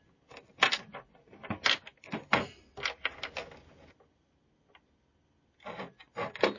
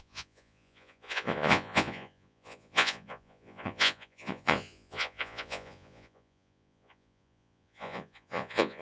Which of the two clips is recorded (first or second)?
first